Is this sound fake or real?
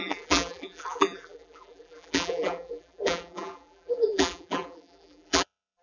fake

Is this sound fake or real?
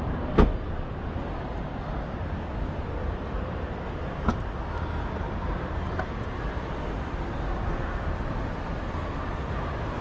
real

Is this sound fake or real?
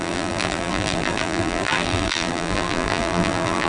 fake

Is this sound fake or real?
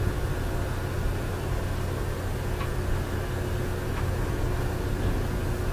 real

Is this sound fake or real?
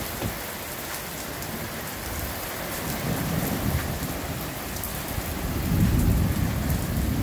fake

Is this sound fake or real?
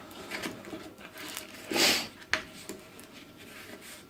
real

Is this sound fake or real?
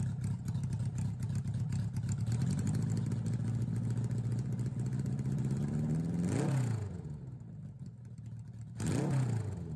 real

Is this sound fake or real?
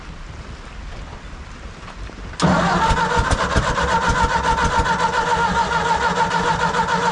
real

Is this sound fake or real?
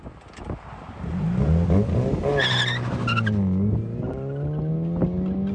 real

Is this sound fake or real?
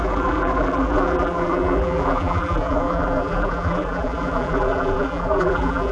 fake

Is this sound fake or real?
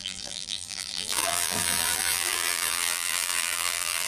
fake